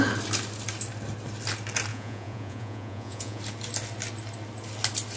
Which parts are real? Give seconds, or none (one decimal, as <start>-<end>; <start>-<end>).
0.0-1.9; 3.4-5.2

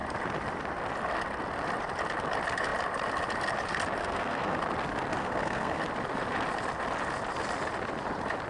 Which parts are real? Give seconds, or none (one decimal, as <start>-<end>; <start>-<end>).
0.0-4.0; 4.6-5.2; 5.8-8.5

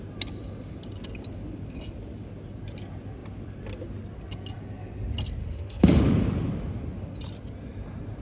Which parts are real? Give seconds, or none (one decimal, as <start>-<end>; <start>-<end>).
0.0-5.4; 6.0-8.2

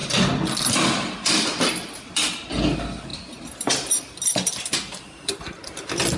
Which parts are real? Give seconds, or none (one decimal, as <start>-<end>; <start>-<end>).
0.0-6.2